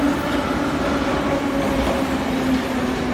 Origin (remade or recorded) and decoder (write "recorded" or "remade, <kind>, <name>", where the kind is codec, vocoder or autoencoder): recorded